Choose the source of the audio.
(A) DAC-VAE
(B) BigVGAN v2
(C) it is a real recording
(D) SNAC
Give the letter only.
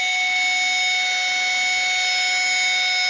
C